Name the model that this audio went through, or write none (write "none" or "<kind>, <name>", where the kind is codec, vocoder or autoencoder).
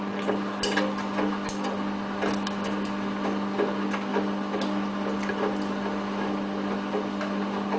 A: none